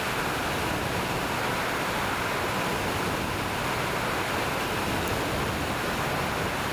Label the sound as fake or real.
real